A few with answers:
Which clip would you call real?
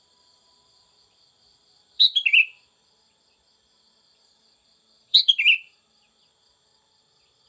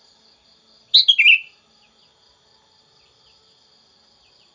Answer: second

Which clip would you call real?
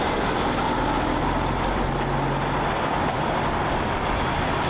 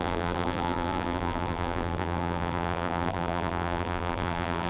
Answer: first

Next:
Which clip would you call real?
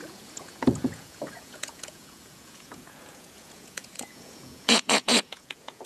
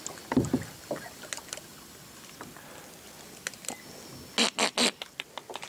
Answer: second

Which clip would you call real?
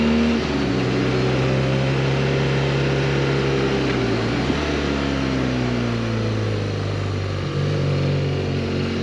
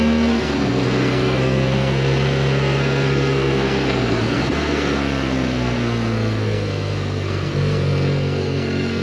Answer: first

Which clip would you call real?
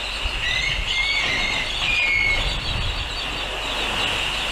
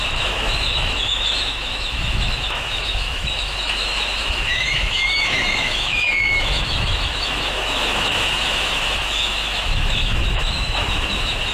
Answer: first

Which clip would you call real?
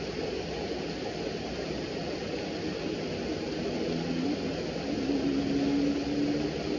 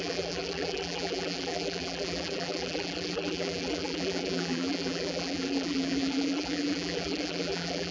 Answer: first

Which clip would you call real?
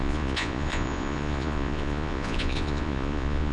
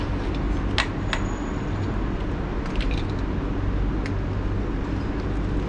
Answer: second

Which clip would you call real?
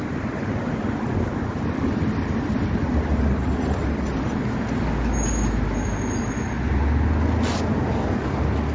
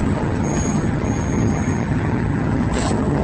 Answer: first